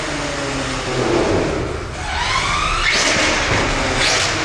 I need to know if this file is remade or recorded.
recorded